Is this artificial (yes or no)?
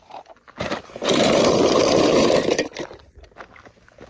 no